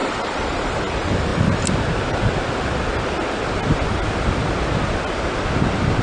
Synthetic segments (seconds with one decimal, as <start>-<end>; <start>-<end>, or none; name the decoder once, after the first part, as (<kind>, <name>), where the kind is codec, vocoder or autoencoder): 0.0-0.8 (vocoder, BigVGAN v2)